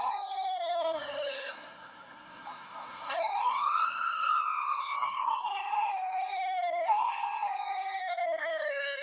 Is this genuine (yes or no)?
no